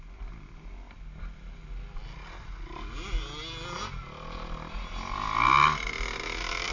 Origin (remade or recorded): recorded